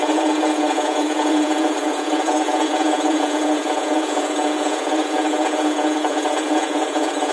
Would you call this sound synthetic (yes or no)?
yes